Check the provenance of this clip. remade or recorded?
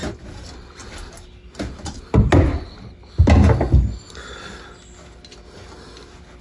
recorded